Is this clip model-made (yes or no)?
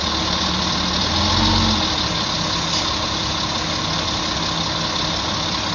no